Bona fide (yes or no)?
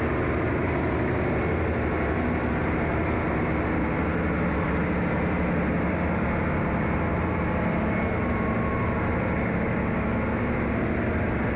yes